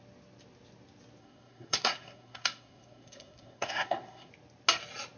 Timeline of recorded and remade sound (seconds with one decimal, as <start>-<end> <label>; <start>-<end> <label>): 0.0-1.2 recorded; 1.2-4.3 remade; 4.3-5.2 recorded